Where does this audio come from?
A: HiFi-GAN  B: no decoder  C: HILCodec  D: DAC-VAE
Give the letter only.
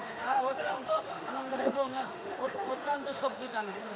D